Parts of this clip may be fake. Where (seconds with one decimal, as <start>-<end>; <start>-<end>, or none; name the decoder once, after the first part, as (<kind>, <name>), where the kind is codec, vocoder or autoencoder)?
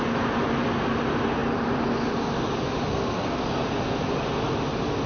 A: 2.9-3.4 (codec, SNAC)